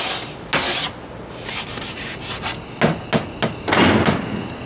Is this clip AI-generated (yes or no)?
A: no